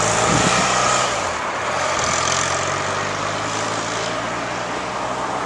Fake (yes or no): no